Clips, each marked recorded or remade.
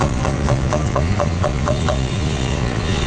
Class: remade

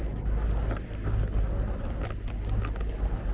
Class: recorded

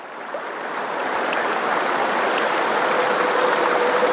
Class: recorded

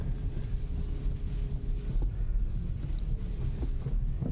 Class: recorded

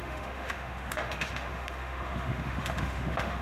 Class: remade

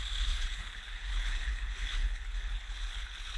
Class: remade